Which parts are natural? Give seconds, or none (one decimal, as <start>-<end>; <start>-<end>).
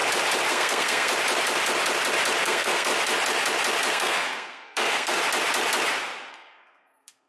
0.0-0.5; 1.1-2.4; 2.9-3.9; 5.2-6.3